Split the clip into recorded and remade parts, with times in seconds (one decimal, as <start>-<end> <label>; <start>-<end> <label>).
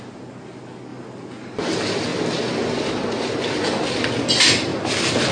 0.0-5.3 recorded